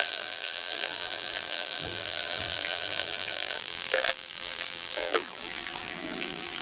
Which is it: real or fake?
fake